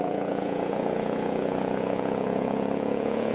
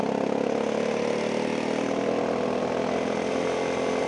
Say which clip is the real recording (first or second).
second